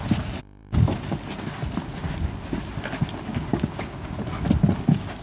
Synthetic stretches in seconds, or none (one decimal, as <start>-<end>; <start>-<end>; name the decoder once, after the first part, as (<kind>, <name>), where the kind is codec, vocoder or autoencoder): 3.5-4.1 (codec, DAC)